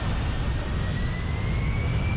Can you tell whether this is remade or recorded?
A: recorded